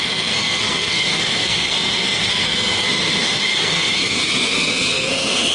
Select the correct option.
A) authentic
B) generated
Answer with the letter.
B